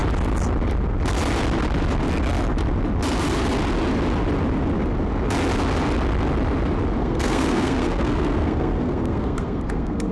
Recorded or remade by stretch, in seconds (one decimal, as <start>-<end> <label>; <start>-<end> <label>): 0.0-7.0 recorded; 7.0-10.1 remade